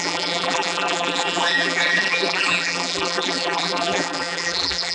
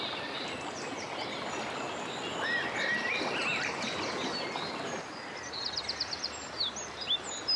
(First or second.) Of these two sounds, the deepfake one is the first